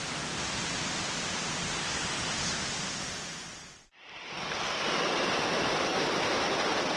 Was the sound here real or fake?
real